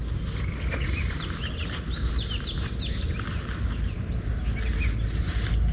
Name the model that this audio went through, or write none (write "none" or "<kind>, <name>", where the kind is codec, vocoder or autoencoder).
none